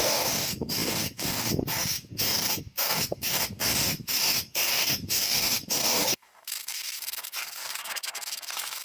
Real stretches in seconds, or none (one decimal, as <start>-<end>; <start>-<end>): none